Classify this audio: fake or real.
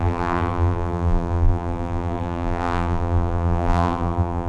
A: fake